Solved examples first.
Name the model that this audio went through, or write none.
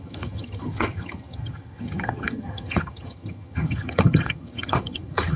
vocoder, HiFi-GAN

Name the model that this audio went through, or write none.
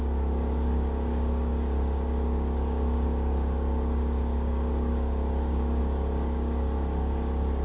codec, DAC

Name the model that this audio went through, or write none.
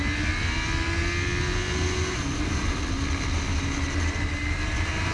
none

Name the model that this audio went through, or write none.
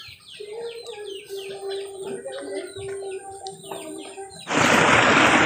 none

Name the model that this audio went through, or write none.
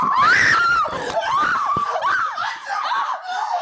vocoder, BigVGAN v2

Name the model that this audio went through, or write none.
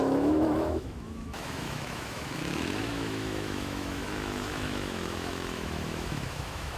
autoencoder, DAC-VAE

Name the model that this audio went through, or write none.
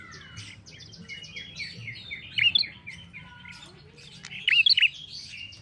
none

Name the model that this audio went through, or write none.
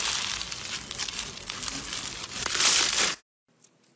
none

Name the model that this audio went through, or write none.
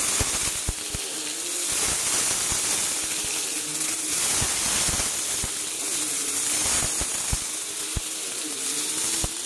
none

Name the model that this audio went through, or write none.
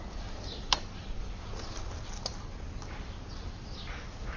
none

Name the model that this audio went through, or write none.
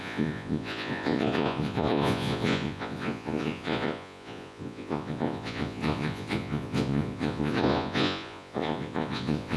vocoder, Vocos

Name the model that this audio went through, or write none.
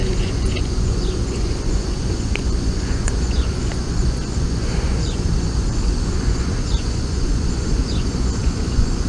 vocoder, Vocos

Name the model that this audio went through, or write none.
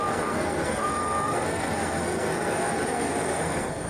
codec, SNAC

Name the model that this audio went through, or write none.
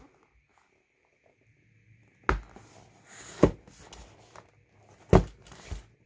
none